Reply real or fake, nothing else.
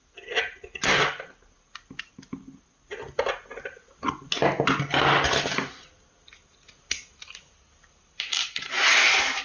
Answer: real